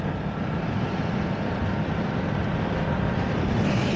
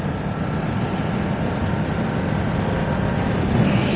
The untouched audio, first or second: second